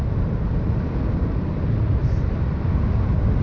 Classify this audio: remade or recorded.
recorded